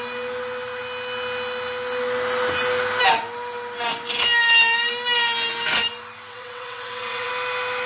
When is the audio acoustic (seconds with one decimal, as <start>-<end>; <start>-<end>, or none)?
0.0-6.3; 7.3-7.9